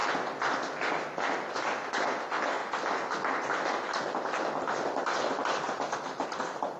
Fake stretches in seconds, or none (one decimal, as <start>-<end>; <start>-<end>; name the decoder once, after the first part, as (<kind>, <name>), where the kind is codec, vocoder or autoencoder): 1.5-2.6 (vocoder, BigVGAN v2)